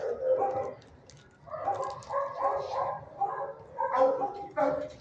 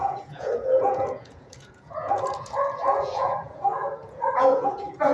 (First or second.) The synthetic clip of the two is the second